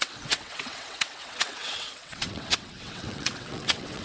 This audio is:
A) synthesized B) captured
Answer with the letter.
A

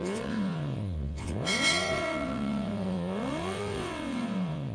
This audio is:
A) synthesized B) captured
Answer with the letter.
A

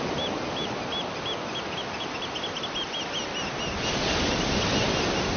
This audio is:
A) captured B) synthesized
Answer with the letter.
A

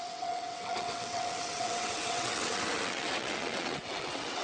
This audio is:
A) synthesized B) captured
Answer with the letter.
A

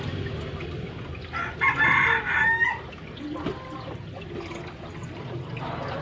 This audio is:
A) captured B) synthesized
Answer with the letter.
A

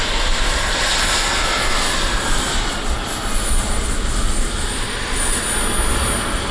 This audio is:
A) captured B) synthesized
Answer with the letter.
A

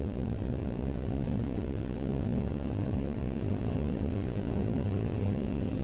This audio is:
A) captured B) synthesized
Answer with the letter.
B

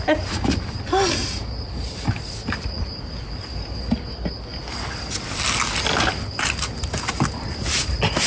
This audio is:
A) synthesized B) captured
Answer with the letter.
B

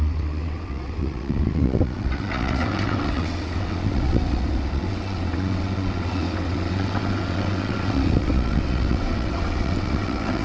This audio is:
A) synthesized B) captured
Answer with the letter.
A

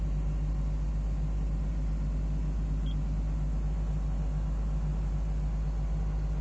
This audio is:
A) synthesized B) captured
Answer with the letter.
B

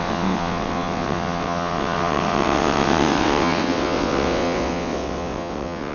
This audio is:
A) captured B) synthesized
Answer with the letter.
B